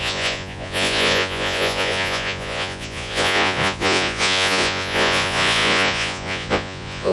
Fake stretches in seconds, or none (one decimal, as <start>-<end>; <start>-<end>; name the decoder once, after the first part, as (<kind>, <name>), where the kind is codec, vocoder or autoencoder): 0.0-7.1 (vocoder, Vocos)